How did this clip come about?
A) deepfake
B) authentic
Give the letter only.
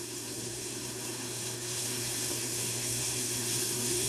A